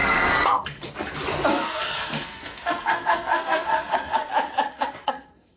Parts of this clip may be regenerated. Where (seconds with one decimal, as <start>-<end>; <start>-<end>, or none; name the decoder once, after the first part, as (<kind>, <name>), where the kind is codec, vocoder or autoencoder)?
0.0-0.9 (codec, SNAC); 1.5-4.3; 4.7-5.6